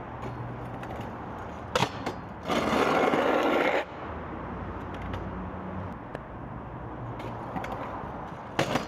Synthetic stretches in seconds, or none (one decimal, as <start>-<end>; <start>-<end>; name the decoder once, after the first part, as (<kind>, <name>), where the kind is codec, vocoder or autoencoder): none